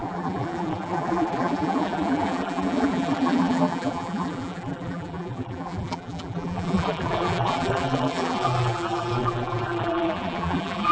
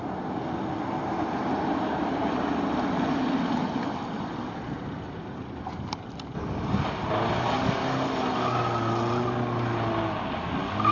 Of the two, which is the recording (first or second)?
second